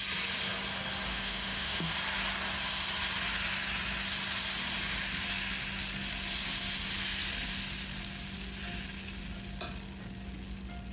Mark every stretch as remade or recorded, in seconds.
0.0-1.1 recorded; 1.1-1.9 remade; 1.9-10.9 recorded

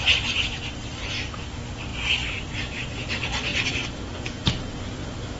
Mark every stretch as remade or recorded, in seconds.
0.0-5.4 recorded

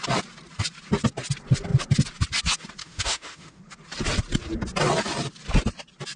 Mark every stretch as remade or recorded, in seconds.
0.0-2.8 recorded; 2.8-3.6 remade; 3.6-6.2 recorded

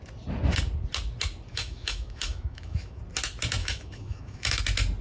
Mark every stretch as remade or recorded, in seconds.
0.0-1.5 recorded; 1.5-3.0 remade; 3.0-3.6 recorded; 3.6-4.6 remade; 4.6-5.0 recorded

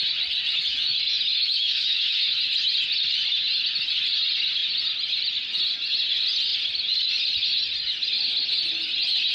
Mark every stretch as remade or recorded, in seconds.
0.0-0.7 recorded; 0.7-2.4 remade; 2.4-9.3 recorded

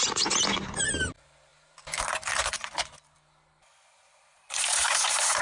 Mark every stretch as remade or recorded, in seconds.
0.0-5.4 recorded

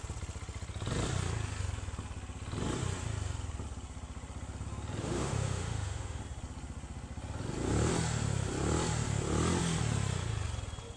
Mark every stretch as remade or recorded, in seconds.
0.0-5.0 recorded; 5.0-6.2 remade; 6.2-11.0 recorded